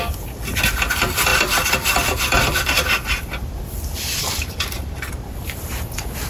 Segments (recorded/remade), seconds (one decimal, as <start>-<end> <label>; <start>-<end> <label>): 0.0-1.3 recorded; 1.3-5.1 remade; 5.1-6.3 recorded